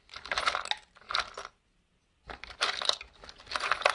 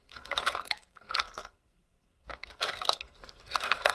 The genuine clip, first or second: first